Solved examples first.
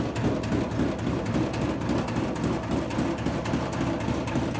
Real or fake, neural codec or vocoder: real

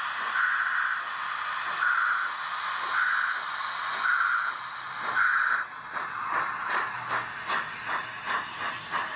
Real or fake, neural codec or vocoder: real